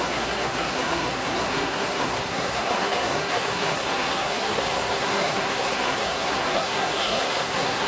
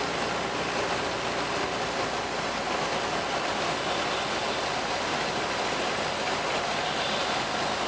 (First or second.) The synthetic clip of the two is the first